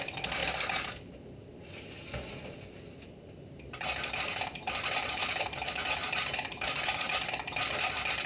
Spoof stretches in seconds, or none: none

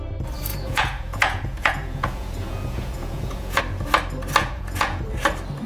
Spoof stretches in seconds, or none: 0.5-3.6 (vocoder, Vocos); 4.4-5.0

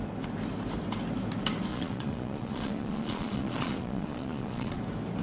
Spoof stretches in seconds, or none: 1.7-4.8 (vocoder, Vocos)